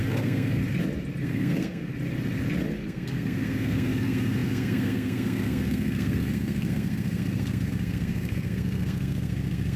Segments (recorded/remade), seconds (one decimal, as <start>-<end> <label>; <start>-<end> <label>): 0.0-0.6 remade; 0.6-1.2 recorded; 1.2-1.9 remade; 1.9-2.7 recorded; 2.7-9.8 remade